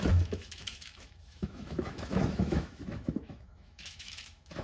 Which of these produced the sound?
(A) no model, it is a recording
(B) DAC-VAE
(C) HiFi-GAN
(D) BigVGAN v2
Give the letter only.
B